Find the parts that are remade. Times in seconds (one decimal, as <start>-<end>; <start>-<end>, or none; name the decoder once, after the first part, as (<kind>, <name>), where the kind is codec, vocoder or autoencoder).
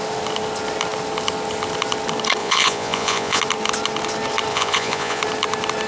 2.4-3.4 (vocoder, Vocos); 4.5-5.2